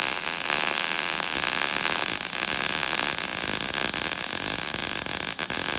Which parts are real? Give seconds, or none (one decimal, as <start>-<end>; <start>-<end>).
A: 0.0-5.8

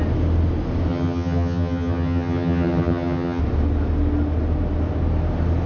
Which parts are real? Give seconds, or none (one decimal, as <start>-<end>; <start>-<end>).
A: 0.0-0.9; 3.4-5.7

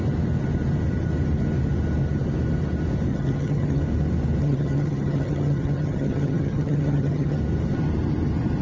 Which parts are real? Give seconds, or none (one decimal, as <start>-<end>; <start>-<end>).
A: 0.0-3.1; 3.8-4.4; 7.4-8.6

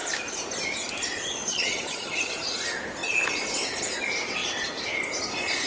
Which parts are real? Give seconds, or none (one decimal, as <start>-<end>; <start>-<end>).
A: 0.0-1.5; 2.3-5.7

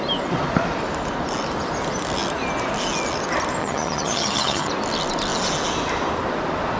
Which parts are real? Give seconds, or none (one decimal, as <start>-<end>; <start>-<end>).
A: 0.0-3.6; 4.7-6.8

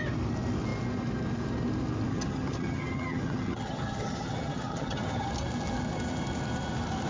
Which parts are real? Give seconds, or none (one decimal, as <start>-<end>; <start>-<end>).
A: 0.0-2.1; 5.3-7.1